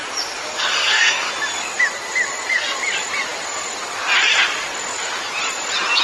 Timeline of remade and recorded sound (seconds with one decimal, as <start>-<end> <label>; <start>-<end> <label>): 0.0-0.7 recorded; 0.7-1.3 remade; 1.3-6.0 recorded